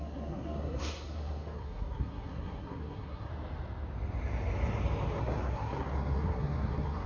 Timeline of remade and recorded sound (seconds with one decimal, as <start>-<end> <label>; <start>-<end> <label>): 0.0-3.3 remade; 3.3-5.2 recorded; 5.2-7.1 remade